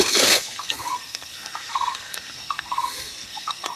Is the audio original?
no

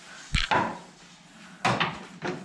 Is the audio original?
yes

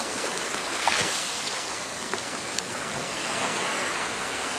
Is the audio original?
no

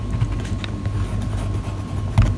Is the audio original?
yes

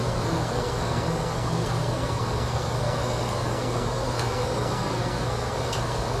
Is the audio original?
no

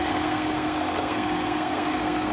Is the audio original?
no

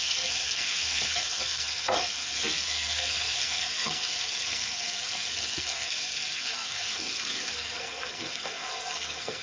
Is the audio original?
no